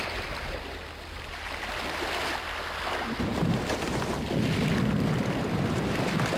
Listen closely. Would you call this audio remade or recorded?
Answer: recorded